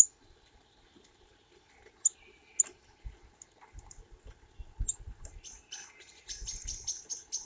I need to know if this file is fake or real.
real